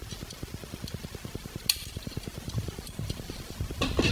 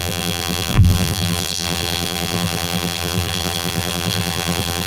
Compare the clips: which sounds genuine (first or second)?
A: first